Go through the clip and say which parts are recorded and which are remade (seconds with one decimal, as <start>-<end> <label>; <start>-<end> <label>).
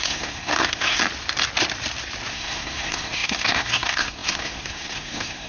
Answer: 0.0-1.0 remade; 1.0-2.3 recorded; 2.3-5.5 remade